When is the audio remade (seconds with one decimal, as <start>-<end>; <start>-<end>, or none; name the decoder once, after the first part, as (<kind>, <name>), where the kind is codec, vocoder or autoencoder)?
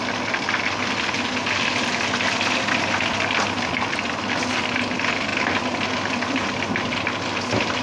none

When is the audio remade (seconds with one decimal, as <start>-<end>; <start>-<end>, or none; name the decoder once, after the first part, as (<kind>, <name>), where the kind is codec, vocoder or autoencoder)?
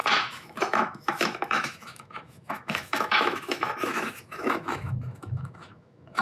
0.0-6.2 (autoencoder, DAC-VAE)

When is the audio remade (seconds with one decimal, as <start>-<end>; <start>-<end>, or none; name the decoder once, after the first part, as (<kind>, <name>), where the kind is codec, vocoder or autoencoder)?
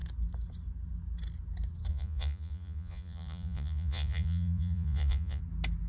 1.9-5.4 (vocoder, Vocos)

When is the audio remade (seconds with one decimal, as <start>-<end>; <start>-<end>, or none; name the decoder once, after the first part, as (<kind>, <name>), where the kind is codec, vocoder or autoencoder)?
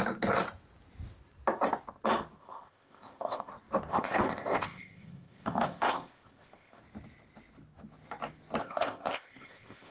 2.4-3.5 (codec, ZipCodec); 3.9-6.8; 8.6-9.9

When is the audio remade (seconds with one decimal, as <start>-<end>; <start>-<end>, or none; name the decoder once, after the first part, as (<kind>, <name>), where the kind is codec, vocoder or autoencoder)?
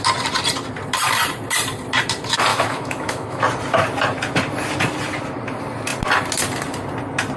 2.5-3.4 (autoencoder, DAC-VAE)